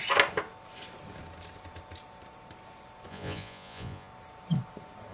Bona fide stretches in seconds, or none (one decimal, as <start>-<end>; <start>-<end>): 0.0-3.1; 4.1-5.1